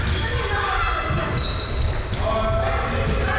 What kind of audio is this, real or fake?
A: real